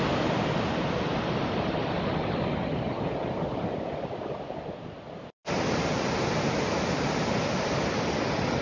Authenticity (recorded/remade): recorded